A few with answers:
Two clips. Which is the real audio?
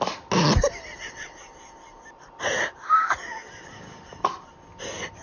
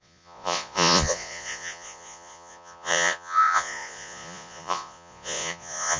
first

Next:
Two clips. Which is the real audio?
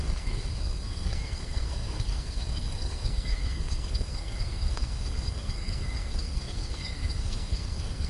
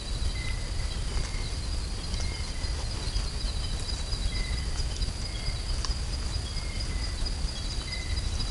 second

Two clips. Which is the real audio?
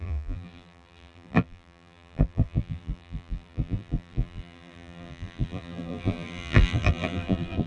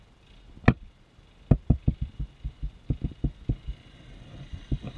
second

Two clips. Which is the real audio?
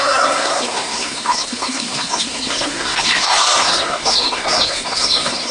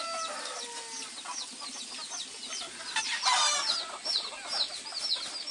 second